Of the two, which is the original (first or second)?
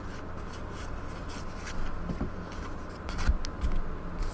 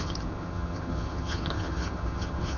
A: first